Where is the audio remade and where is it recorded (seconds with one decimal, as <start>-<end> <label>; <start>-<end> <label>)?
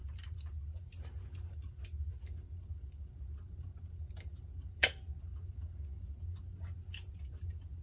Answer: 0.0-7.8 recorded